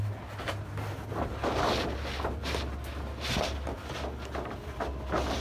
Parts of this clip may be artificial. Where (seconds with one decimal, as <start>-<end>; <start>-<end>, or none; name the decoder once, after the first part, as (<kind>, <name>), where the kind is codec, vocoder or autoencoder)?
none